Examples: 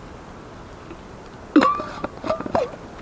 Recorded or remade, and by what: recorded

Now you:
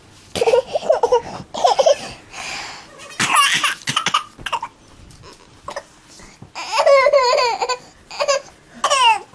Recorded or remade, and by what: recorded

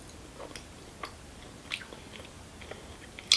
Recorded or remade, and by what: recorded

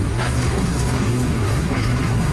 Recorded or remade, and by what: remade, codec, SNAC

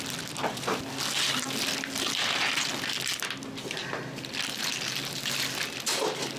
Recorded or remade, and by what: recorded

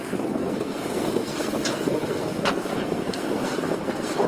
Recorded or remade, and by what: remade, codec, SNAC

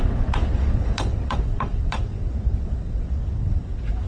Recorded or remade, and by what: remade, vocoder, WaveNeXt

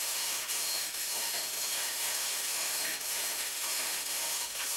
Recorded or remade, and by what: remade, autoencoder, DAC-VAE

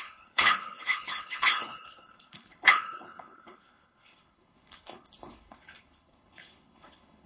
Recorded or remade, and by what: remade, codec, HILCodec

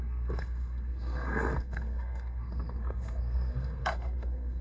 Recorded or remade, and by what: remade, codec, SNAC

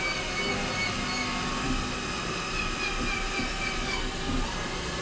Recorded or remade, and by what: recorded